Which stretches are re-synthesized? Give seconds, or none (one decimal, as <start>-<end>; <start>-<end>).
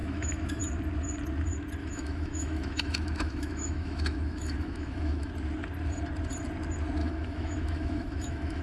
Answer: 0.0-0.6; 1.8-5.3; 7.0-8.6